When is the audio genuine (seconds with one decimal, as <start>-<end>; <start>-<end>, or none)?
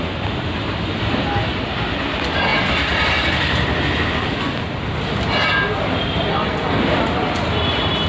0.0-6.3; 6.8-8.1